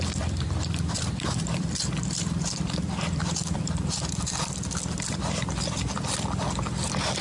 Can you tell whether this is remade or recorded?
remade